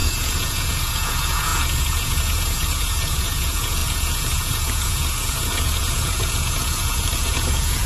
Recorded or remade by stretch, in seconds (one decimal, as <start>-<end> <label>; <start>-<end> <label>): 0.0-7.9 remade